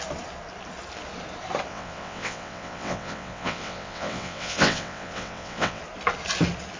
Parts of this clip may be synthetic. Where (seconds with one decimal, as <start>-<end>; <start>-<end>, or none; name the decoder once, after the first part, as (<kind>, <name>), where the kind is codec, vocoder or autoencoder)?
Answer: 1.7-5.8 (vocoder, WaveNeXt)